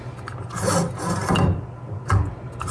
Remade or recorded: recorded